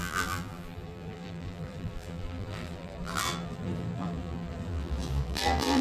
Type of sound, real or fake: fake